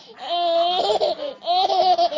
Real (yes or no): yes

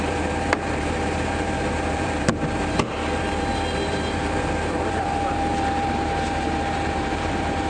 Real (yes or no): no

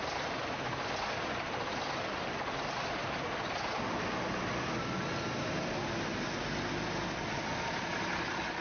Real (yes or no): yes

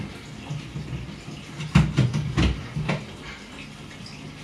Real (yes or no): yes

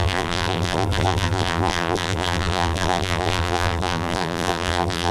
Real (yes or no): no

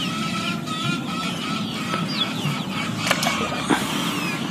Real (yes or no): yes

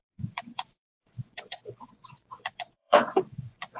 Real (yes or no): no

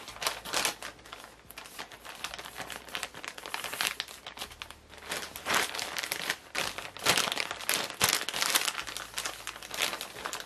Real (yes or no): yes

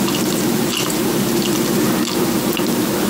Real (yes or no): yes